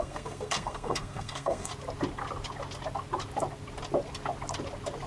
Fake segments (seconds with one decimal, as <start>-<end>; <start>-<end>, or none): 0.0-1.7

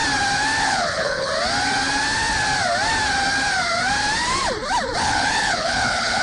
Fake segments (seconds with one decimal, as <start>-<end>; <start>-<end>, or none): 0.6-1.3; 5.0-6.2